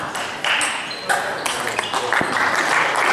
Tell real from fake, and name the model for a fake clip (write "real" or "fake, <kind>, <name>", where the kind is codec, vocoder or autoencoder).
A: real